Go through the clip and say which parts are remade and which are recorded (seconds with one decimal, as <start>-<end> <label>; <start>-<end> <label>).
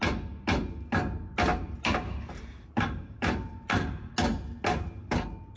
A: 0.0-1.5 recorded; 1.5-4.1 remade; 4.1-5.6 recorded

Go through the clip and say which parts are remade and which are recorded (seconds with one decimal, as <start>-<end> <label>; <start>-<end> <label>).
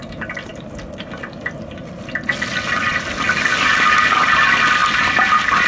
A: 0.0-5.7 recorded